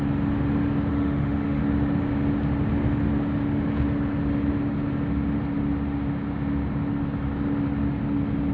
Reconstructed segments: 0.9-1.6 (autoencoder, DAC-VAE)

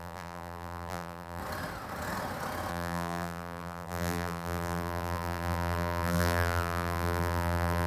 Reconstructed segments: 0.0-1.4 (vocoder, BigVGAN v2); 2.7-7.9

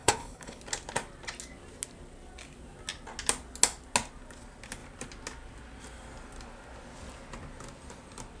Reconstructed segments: 0.0-0.6 (codec, HILCodec)

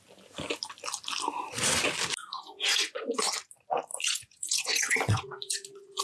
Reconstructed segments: 2.2-3.3 (vocoder, Vocos); 3.9-6.0

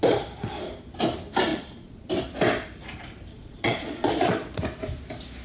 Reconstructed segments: 1.5-2.1 (vocoder, Vocos); 3.3-4.3

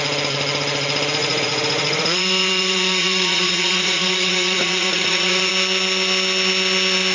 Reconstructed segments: 1.2-5.5 (vocoder, Vocos)

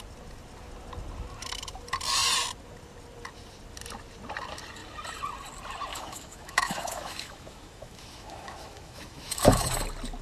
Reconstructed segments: 5.9-9.7 (autoencoder, DAC-VAE)